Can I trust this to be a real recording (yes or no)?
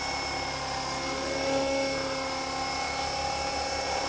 yes